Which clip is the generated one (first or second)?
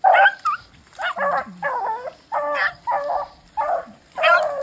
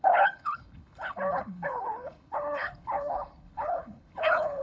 second